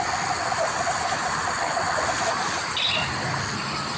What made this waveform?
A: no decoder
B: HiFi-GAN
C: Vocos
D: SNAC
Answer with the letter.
A